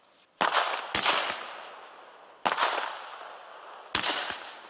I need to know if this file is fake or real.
real